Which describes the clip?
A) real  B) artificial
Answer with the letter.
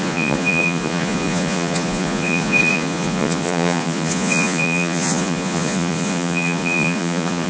B